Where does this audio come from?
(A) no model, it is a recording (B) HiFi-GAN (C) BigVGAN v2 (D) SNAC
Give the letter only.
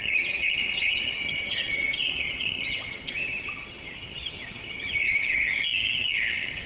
B